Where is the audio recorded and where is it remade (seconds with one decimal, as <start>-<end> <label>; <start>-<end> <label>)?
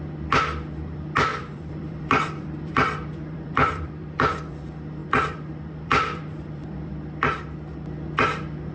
0.0-1.3 recorded; 1.3-4.6 remade; 4.6-5.0 recorded; 5.0-6.9 remade; 6.9-8.7 recorded